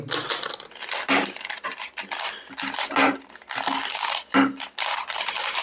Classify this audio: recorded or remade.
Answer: recorded